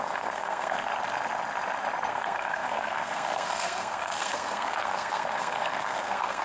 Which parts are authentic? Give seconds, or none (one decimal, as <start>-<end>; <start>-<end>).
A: 0.9-2.1